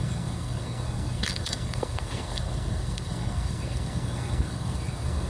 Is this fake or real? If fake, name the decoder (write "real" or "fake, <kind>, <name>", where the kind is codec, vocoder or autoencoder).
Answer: fake, codec, SNAC